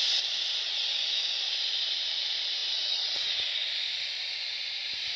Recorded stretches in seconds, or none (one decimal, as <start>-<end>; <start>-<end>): 0.0-5.2